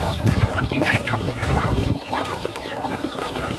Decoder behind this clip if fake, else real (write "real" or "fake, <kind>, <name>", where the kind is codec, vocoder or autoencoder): fake, codec, SNAC